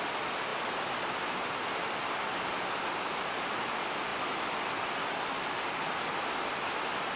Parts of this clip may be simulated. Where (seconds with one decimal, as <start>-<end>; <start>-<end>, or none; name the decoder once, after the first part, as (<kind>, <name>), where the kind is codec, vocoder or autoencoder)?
none